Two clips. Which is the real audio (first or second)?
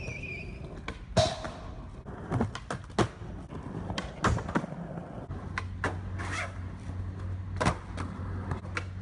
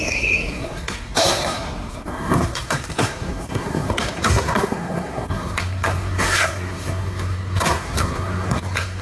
first